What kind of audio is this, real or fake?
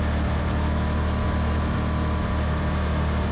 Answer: real